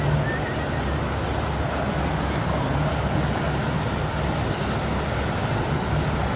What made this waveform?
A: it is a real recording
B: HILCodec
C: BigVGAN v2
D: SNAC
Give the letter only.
A